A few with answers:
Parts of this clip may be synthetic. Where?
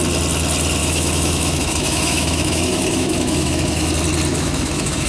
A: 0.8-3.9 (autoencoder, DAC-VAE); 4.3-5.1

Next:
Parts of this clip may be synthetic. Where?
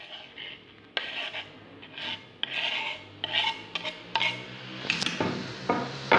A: none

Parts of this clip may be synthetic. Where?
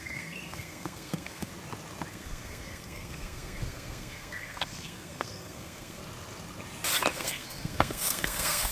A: 0.0-1.5 (codec, SNAC); 2.1-6.0; 7.1-8.7